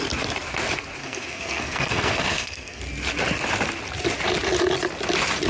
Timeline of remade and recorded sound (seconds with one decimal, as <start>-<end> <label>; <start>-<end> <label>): 0.0-1.0 recorded; 1.0-2.8 remade; 2.8-5.5 recorded